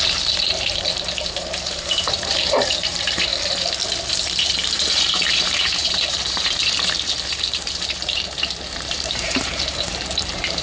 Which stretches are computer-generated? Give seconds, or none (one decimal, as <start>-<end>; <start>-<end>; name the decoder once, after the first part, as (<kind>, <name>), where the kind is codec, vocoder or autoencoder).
0.0-3.3 (vocoder, BigVGAN v2); 4.1-10.6

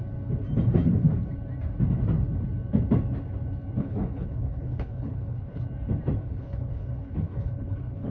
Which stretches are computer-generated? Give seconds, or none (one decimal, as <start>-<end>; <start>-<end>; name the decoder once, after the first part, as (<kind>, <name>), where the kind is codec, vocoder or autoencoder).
3.8-5.6 (codec, HILCodec); 6.2-8.1

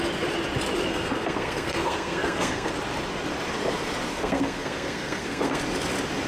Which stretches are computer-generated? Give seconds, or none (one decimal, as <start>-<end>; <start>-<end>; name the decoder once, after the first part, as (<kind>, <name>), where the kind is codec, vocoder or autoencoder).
0.9-2.7 (codec, SNAC); 4.1-5.6

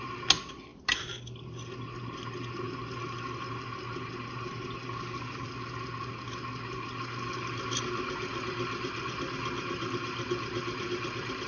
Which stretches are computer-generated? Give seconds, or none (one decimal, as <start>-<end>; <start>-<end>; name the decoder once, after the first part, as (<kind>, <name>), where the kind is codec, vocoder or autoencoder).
none

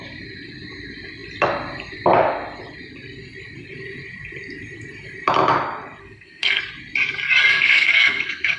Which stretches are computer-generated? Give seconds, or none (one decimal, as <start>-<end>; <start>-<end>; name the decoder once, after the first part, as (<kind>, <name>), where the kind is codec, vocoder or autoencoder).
6.0-6.6 (codec, SNAC); 7.5-8.6

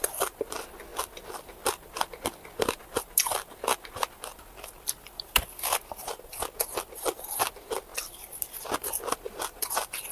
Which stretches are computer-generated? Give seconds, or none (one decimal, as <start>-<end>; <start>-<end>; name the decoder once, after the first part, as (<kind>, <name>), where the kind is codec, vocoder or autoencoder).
none